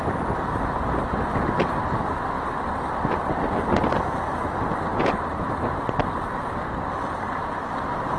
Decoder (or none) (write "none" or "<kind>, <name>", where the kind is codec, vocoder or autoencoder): none